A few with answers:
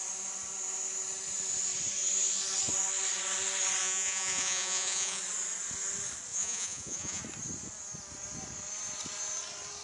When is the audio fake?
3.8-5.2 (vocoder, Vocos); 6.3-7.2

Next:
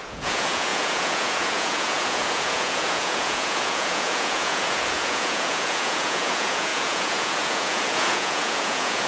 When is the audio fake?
0.0-9.1 (vocoder, Vocos)

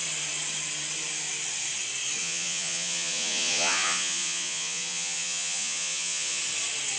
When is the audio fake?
2.2-6.4 (vocoder, Vocos)

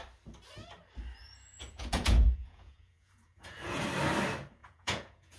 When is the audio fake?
1.2-3.8 (vocoder, Vocos); 4.6-5.4

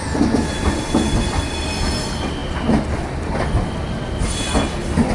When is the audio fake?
none

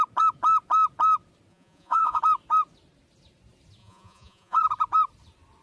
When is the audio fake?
1.5-2.2 (vocoder, Vocos); 3.8-4.6

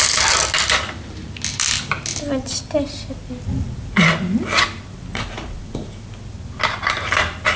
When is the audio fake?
5.1-5.9 (vocoder, Vocos)